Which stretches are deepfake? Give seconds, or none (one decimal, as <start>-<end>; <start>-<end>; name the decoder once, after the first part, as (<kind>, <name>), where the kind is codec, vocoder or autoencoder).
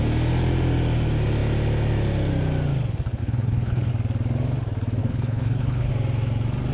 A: 3.2-3.9 (codec, HILCodec); 5.0-5.9